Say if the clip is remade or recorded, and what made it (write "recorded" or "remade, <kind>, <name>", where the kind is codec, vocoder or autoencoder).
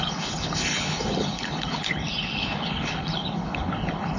remade, codec, HILCodec